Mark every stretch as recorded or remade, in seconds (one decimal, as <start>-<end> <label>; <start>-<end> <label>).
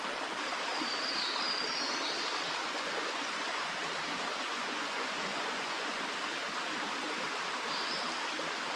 0.0-2.6 recorded; 2.6-3.7 remade; 3.7-4.5 recorded; 4.5-6.0 remade; 6.0-8.8 recorded